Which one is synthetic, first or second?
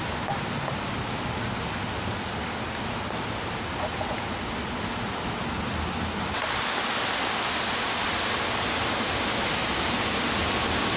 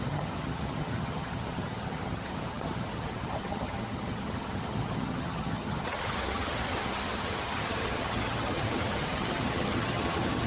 second